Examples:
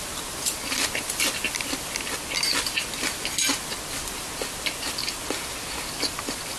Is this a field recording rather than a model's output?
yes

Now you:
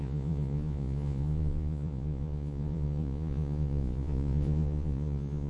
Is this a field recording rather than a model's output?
no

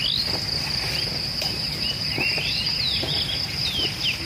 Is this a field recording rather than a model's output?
yes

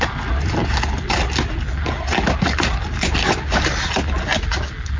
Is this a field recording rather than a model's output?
yes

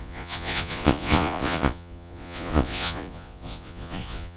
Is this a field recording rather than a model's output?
no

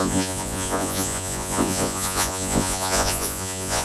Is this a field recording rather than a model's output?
no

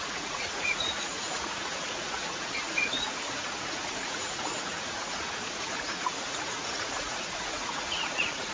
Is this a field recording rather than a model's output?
no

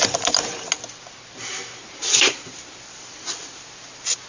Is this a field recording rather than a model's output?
yes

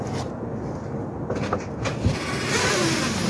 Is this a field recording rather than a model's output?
yes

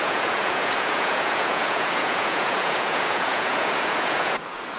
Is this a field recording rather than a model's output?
no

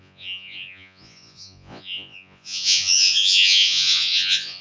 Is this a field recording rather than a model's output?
no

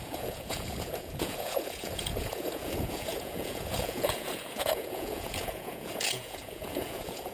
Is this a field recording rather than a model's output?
no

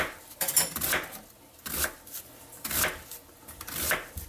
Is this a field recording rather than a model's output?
yes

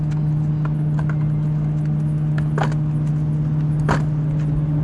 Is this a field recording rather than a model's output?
yes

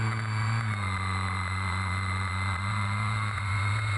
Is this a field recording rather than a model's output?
no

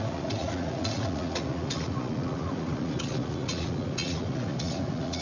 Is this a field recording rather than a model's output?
no